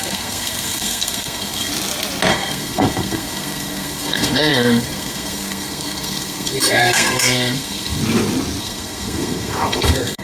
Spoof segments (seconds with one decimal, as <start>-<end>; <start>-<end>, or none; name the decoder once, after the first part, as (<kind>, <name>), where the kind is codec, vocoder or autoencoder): 0.0-1.7 (codec, SNAC); 2.3-8.0; 8.6-10.2